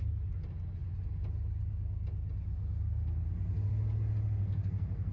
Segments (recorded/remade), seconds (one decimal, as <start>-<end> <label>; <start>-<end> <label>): 0.0-4.4 recorded; 4.4-5.1 remade